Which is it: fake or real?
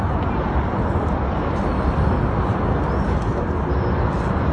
real